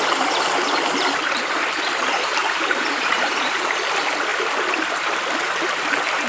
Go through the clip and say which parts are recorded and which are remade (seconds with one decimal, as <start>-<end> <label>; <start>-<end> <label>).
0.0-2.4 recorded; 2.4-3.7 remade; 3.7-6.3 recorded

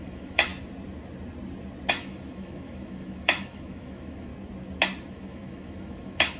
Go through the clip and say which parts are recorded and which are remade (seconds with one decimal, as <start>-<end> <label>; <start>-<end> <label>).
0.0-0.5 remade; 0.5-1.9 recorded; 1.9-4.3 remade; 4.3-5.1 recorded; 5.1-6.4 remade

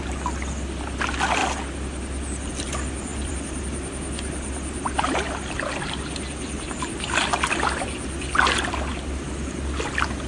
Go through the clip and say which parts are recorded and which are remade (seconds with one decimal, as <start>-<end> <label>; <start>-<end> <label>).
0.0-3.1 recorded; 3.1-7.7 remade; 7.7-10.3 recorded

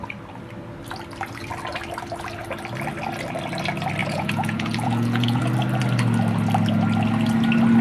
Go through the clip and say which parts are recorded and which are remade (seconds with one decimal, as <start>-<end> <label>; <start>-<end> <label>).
0.0-4.0 recorded; 4.0-5.4 remade; 5.4-7.8 recorded

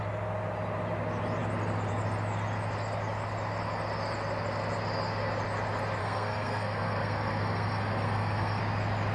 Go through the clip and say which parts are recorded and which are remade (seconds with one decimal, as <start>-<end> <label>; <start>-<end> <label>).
0.0-6.0 recorded; 6.0-8.6 remade; 8.6-9.1 recorded

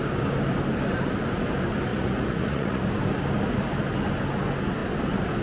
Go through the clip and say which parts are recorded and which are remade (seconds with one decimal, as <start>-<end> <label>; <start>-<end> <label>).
0.0-1.9 recorded; 1.9-2.8 remade; 2.8-5.4 recorded